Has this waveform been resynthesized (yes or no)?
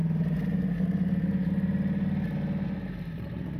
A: no